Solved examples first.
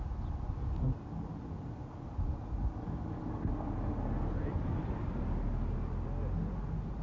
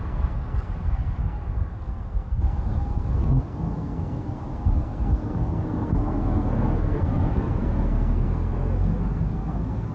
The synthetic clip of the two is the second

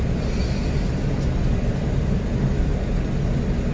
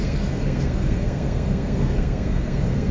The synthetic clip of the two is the second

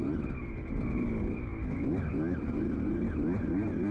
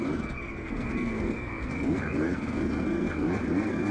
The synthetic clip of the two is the second